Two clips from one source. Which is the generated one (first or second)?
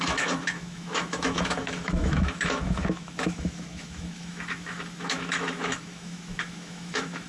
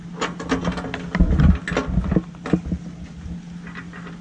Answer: first